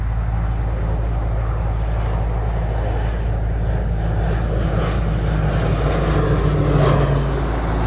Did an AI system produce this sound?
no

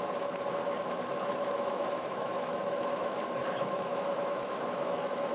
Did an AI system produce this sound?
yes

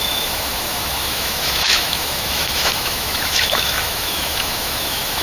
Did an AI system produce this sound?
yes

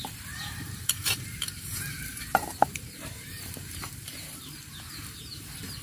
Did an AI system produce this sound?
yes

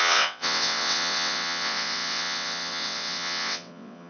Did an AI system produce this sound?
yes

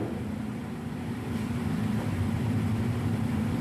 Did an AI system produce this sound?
yes